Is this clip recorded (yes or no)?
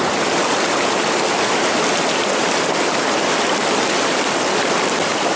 yes